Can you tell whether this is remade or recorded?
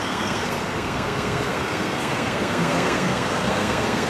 remade